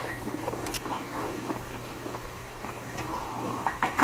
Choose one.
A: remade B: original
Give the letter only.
A